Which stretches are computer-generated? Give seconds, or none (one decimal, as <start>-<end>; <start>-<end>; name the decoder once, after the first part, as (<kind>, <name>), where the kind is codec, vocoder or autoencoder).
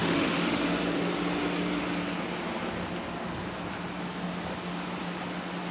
0.0-0.6 (autoencoder, DAC-VAE)